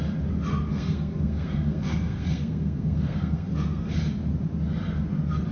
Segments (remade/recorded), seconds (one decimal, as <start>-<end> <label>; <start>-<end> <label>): 0.0-0.7 recorded; 0.7-4.0 remade; 4.0-5.5 recorded